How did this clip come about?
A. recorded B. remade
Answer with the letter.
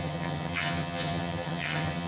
B